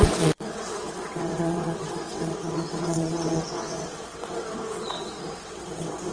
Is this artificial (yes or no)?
yes